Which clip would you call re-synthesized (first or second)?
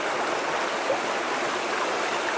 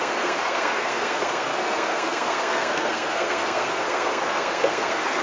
second